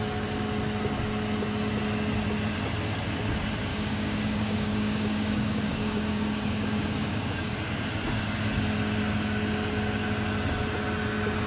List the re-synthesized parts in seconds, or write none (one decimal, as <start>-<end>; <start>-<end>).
3.7-7.5